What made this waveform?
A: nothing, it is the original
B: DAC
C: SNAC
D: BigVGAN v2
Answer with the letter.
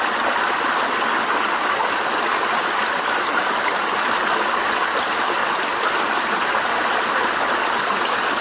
A